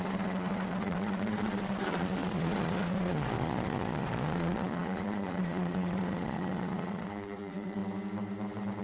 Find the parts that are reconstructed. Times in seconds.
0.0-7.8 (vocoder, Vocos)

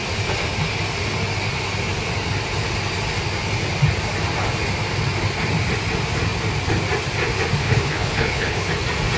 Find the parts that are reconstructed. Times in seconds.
7.6-8.7 (codec, HILCodec)

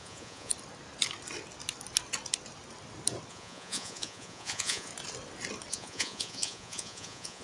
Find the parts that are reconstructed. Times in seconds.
0.0-0.5 (vocoder, Vocos); 3.3-4.9; 5.7-7.4

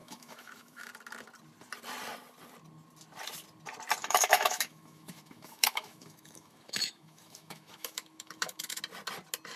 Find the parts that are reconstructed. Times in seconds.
0.0-0.9 (autoencoder, DAC-VAE); 4.0-8.8

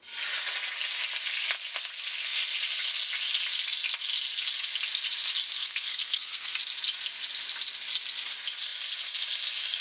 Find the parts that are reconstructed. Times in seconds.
5.6-6.6 (codec, SNAC)